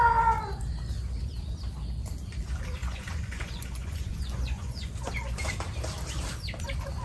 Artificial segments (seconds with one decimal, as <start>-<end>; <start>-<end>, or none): 2.8-5.5